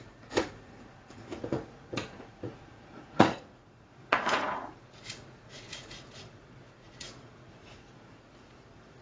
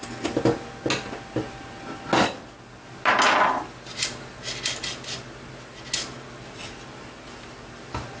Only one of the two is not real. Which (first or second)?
first